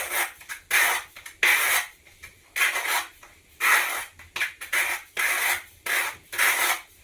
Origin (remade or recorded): recorded